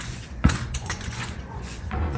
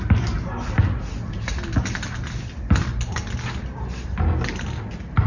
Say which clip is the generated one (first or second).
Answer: first